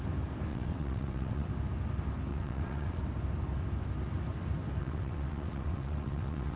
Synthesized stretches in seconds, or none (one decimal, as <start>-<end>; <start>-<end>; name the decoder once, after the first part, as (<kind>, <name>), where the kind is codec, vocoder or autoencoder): 0.5-1.5 (vocoder, WaveNeXt); 2.3-3.0; 4.8-6.6